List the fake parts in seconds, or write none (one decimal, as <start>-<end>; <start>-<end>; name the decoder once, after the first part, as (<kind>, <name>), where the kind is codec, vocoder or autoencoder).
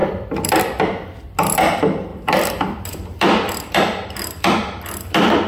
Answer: 0.0-0.6 (vocoder, BigVGAN v2); 2.1-5.5